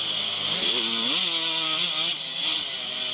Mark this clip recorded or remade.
recorded